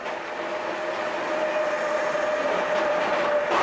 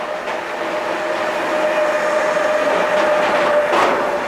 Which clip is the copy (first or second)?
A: first